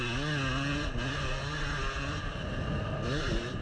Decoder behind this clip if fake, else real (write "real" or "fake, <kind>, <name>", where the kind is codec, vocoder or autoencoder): real